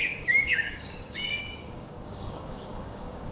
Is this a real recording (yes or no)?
no